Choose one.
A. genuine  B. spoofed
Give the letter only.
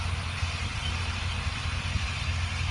A